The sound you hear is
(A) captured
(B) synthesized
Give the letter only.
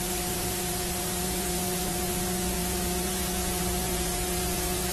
B